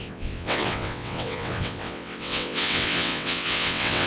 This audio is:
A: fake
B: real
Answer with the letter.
A